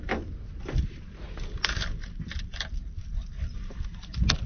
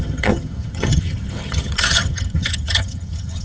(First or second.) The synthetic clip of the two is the second